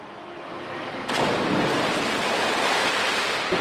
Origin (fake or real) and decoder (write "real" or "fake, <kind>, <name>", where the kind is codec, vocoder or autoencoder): real